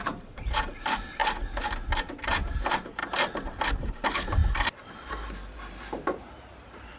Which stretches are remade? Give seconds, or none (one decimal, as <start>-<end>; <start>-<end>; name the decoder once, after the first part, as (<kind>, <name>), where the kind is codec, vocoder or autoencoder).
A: 0.0-1.2 (vocoder, BigVGAN v2); 2.0-3.0; 3.7-7.0